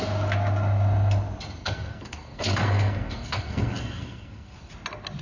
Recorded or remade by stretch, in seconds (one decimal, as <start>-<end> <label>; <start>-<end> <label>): 0.0-1.6 recorded; 1.6-4.7 remade; 4.7-5.2 recorded